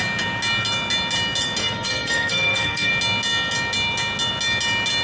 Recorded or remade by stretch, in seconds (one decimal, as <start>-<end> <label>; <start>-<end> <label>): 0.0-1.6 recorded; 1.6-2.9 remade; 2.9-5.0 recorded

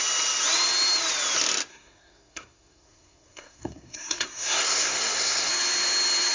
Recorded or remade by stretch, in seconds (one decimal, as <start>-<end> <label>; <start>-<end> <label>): 0.0-1.7 recorded; 1.7-5.5 remade; 5.5-6.3 recorded

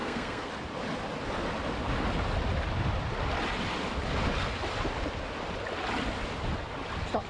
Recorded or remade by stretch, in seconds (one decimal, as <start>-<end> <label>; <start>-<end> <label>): 0.0-0.5 remade; 0.5-7.3 recorded